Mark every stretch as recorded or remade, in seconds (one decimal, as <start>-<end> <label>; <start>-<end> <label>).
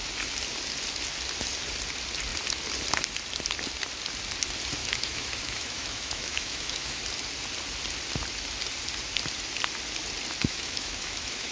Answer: 0.0-4.8 recorded; 4.8-7.0 remade; 7.0-10.4 recorded; 10.4-11.5 remade